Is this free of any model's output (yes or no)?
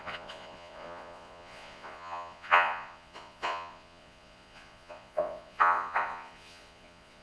no